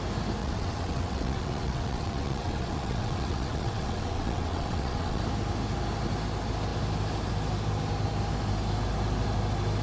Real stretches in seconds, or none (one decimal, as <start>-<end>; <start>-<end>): 0.0-0.4; 5.2-9.8